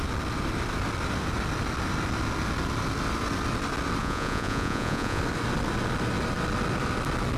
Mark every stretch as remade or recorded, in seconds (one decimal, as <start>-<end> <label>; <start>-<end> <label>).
0.0-4.0 recorded; 4.0-5.2 remade; 5.2-7.4 recorded